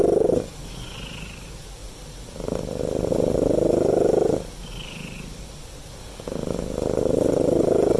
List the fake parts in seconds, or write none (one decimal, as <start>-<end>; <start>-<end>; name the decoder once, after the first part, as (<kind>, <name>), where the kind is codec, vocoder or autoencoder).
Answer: none